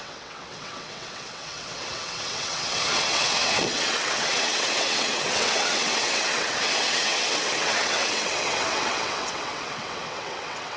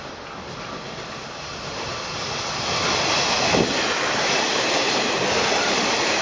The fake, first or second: first